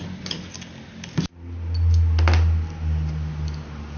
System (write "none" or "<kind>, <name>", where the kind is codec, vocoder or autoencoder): none